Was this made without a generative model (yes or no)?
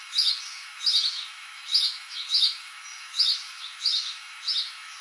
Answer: no